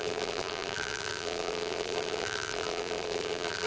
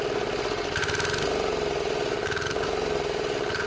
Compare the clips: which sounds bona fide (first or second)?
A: second